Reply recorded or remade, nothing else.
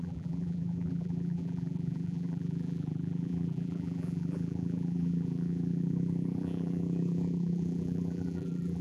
remade